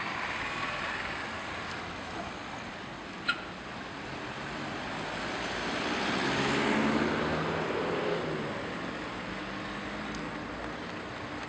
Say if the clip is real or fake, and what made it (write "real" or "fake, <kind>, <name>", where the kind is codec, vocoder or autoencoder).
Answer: real